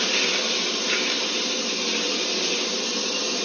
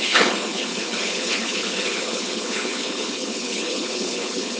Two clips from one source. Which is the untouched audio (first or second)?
first